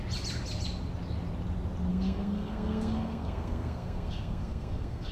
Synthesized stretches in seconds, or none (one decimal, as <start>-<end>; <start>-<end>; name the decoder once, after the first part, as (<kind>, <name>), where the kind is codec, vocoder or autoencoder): 1.9-5.1 (codec, SNAC)